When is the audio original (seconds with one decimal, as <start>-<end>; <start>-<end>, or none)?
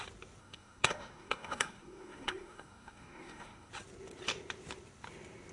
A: 0.0-0.4; 3.7-5.5